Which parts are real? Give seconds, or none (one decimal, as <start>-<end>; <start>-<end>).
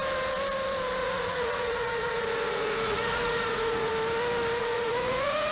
0.0-1.0; 3.9-4.6